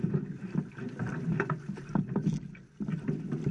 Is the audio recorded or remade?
recorded